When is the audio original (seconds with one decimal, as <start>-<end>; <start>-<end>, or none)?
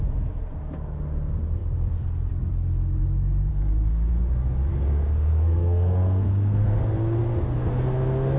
0.0-3.5; 4.2-4.7; 6.8-8.4